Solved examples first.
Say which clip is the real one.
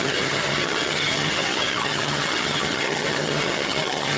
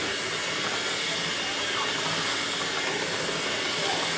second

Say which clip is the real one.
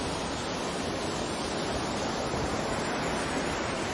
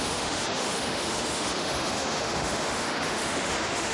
first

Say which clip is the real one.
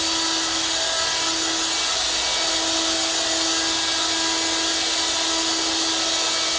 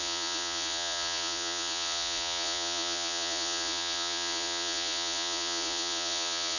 first